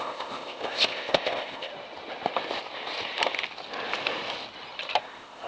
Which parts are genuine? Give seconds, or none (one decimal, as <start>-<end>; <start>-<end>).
1.7-5.0